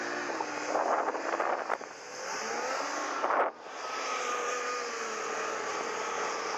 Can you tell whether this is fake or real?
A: real